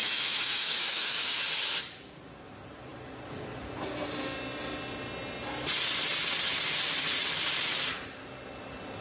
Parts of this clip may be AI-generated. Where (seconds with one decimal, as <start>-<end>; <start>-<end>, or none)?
0.0-1.4